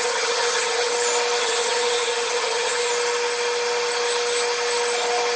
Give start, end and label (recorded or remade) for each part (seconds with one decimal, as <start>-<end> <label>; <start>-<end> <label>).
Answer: 0.0-0.9 remade; 0.9-1.4 recorded; 1.4-2.9 remade; 2.9-5.4 recorded